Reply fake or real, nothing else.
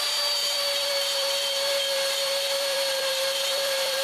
fake